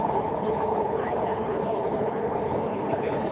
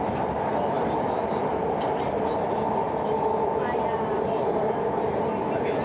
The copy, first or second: first